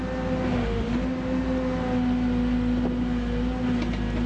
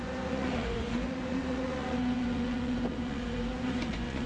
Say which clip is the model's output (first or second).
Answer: second